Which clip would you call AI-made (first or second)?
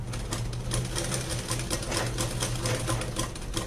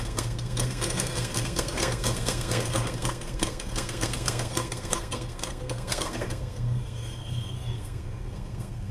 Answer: second